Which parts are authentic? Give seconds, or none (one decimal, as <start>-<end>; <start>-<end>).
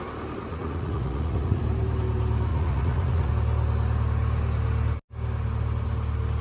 0.0-0.5; 1.6-2.5; 3.3-6.4